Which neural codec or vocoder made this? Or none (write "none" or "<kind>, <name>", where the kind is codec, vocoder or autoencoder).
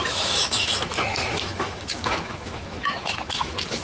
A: autoencoder, DAC-VAE